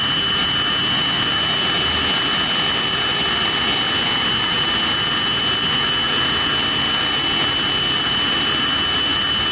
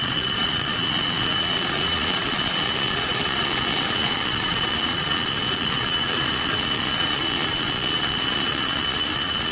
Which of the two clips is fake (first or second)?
second